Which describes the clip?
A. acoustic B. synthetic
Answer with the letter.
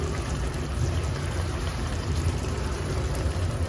B